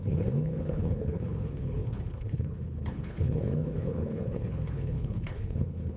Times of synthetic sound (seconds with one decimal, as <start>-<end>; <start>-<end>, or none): 0.0-6.0

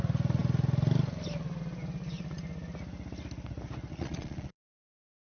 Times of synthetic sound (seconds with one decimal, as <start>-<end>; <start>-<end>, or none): 3.9-5.3

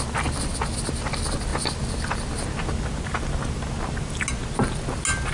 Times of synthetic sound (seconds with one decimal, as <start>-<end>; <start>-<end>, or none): none

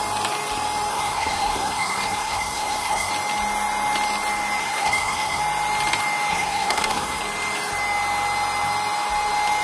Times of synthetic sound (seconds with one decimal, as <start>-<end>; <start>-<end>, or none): 0.9-3.1; 4.6-5.4; 6.3-7.2

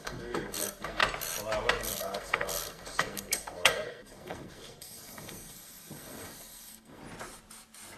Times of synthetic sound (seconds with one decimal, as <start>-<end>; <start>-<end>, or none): 0.0-1.0; 1.8-7.0